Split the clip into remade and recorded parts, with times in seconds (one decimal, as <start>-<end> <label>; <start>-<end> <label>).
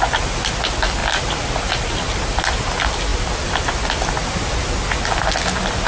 0.0-5.9 recorded